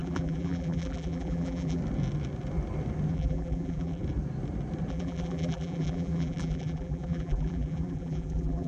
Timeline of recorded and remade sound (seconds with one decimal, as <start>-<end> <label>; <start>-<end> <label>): 0.0-1.8 remade; 1.8-3.1 recorded; 3.1-4.0 remade; 4.0-4.9 recorded; 4.9-8.7 remade